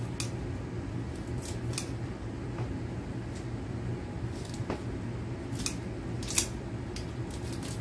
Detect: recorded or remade recorded